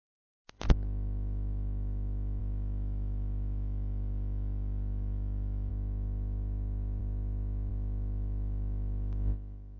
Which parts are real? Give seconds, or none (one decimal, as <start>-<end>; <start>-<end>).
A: 0.0-2.4; 5.7-9.8